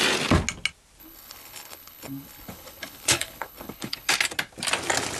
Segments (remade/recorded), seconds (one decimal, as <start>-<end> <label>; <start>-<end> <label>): 0.0-1.0 recorded; 1.0-4.1 remade; 4.1-5.2 recorded